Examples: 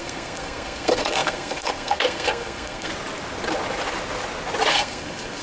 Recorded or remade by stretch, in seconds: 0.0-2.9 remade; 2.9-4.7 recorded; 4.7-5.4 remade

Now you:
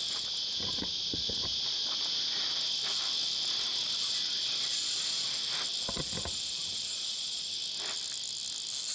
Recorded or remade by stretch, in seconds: 0.0-6.9 recorded; 6.9-7.5 remade; 7.5-8.9 recorded

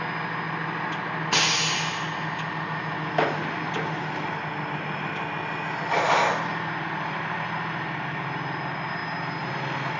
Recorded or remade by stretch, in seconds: 0.0-10.0 recorded